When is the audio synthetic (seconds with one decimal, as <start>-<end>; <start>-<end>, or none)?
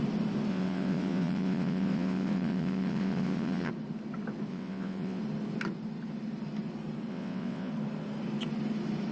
0.5-3.7; 4.5-5.2; 7.1-7.7